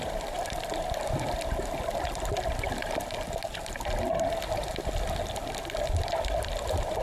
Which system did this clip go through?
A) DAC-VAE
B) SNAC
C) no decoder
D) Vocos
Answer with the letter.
C